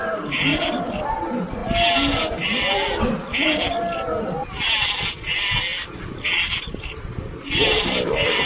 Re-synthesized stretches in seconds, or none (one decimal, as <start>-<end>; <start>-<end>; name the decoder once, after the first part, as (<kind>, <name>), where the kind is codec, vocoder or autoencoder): none